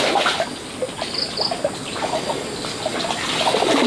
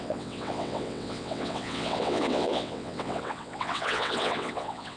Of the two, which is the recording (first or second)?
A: first